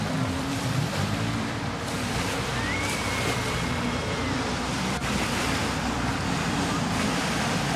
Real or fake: fake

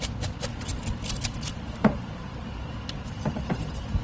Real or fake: real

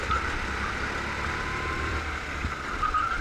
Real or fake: fake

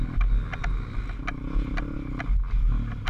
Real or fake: real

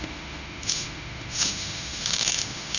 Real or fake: fake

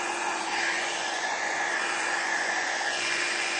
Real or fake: fake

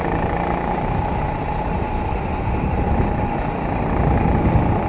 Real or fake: real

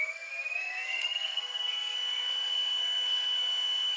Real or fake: fake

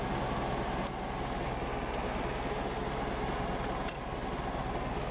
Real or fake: real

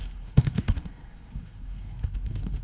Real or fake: fake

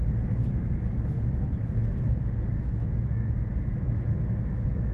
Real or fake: fake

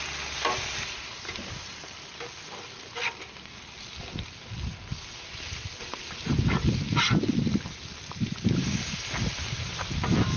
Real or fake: real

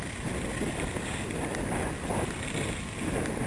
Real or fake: real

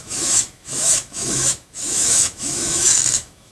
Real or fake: fake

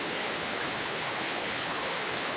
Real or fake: fake